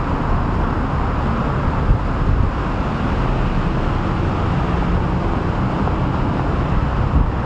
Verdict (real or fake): real